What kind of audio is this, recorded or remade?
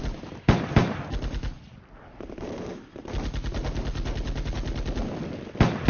recorded